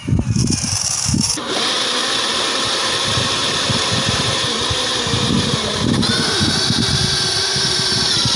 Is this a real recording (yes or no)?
no